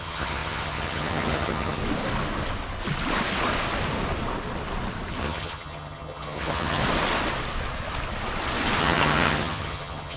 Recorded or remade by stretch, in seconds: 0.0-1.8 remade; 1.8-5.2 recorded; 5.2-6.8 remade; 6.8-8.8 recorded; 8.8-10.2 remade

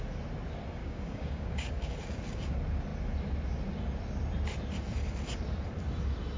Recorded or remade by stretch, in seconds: 0.0-0.8 recorded; 0.8-1.9 remade; 1.9-6.4 recorded

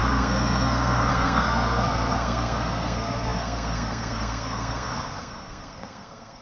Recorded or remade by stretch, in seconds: 0.0-6.4 remade

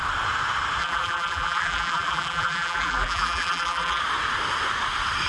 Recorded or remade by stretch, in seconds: 0.0-0.8 recorded; 0.8-4.0 remade; 4.0-5.3 recorded

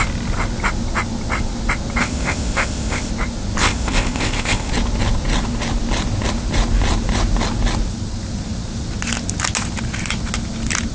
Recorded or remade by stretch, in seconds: 0.0-2.0 recorded; 2.0-3.1 remade; 3.1-3.6 recorded; 3.6-4.7 remade; 4.7-10.9 recorded

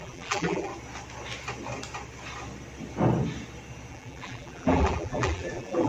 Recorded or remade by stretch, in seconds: 0.0-0.7 remade; 0.7-3.9 recorded; 3.9-5.9 remade

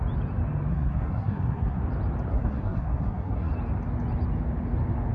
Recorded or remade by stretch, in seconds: 0.0-0.7 recorded; 0.7-1.8 remade; 1.8-2.3 recorded; 2.3-3.5 remade; 3.5-5.1 recorded

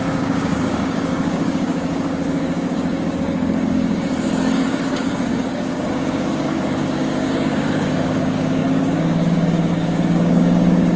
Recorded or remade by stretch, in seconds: 0.0-11.0 remade